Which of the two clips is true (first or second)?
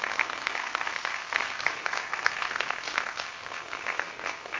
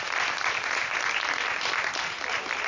second